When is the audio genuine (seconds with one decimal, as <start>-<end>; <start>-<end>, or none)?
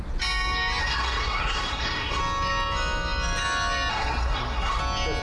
0.0-0.8; 2.2-3.9; 4.8-5.2